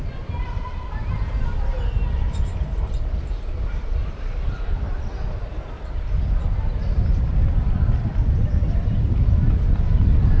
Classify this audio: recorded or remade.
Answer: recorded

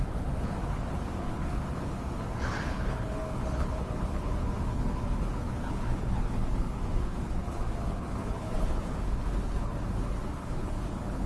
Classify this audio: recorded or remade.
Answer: remade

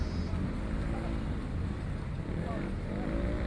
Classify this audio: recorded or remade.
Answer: recorded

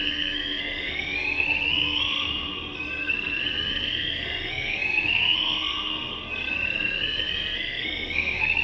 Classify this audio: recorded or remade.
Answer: remade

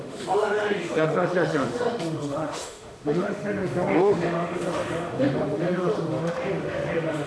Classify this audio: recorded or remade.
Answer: remade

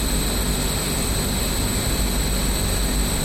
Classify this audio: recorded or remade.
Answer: recorded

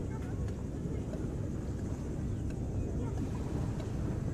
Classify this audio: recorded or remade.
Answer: recorded